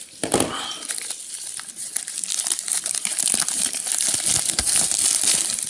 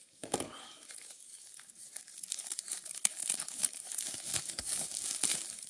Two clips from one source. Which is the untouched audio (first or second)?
first